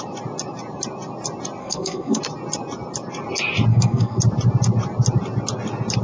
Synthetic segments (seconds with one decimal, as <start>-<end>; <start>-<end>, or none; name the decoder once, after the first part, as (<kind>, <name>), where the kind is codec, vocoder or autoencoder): 1.6-2.2 (codec, SNAC); 3.7-4.2